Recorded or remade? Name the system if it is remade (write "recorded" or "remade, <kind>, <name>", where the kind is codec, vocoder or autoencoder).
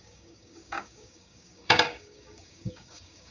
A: remade, codec, DAC